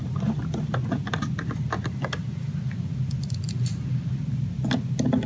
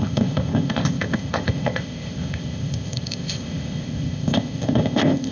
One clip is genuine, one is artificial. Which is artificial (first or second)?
second